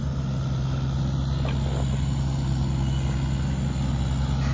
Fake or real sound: real